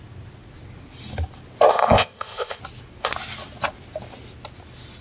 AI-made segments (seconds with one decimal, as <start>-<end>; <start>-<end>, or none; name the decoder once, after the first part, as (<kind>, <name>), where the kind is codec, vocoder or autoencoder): 1.7-2.6 (codec, ZipCodec)